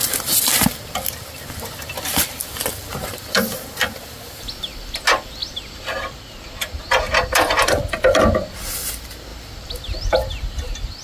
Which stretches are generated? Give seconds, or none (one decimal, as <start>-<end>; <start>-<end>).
none